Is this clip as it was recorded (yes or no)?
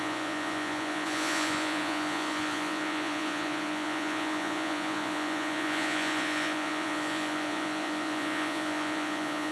no